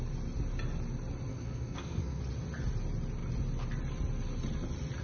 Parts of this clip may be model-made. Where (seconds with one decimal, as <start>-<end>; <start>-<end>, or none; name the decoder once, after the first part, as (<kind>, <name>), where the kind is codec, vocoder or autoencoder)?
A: 1.3-2.2 (codec, SNAC)

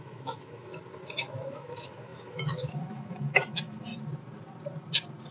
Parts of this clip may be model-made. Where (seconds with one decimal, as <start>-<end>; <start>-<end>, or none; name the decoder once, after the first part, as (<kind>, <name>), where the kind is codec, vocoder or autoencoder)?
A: 0.0-0.7 (autoencoder, DAC-VAE); 1.5-3.9